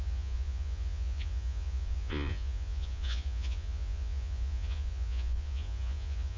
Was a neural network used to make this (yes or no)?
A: yes